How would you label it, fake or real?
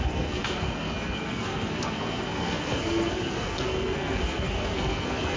fake